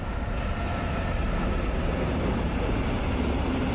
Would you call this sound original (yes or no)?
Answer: yes